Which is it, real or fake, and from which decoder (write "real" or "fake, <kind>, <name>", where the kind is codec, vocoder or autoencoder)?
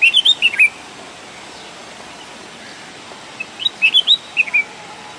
real